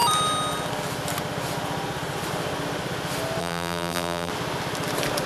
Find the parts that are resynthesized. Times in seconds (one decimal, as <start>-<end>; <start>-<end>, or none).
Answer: 3.4-4.3